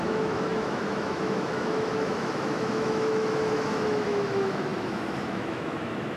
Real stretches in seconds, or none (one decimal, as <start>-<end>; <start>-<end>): none